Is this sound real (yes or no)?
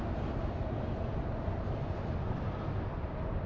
yes